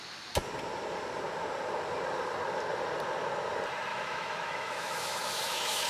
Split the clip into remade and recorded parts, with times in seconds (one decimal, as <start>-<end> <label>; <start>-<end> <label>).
0.0-3.9 recorded; 3.9-5.9 remade